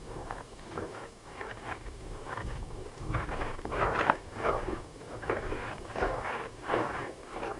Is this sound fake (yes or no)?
yes